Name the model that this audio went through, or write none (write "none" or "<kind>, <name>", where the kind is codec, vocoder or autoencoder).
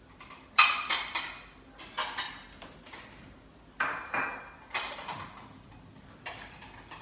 none